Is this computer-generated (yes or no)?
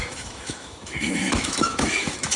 yes